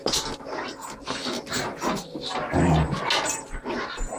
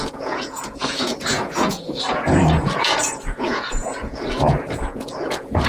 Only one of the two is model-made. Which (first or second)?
second